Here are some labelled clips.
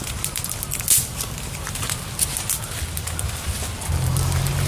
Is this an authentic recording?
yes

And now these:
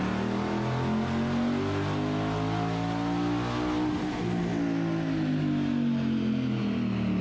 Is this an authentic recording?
yes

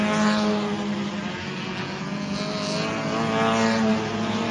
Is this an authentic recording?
yes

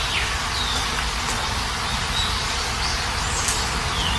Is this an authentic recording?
yes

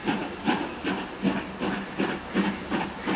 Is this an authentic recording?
yes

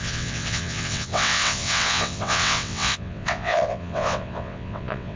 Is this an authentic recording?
no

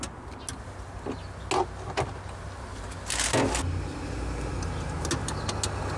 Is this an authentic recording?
yes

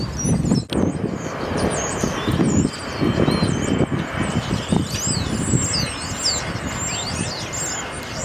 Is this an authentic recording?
yes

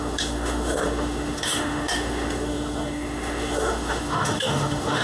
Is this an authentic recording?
no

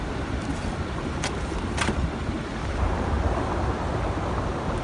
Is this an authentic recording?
yes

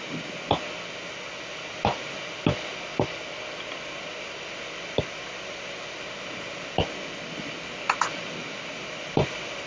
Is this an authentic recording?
yes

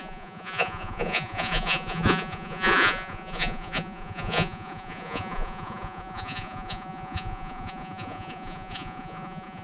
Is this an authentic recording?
no